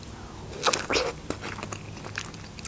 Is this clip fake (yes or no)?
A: no